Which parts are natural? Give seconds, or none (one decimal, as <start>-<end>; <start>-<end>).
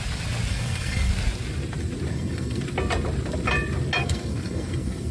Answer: 0.0-0.5; 1.1-2.1; 2.6-4.0